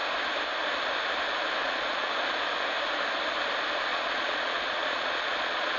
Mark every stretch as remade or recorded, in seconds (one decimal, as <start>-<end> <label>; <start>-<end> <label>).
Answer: 0.0-1.6 recorded; 1.6-2.1 remade; 2.1-3.9 recorded; 3.9-5.8 remade